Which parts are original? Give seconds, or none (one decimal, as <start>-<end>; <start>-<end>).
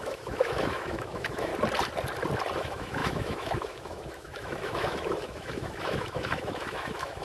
1.5-2.6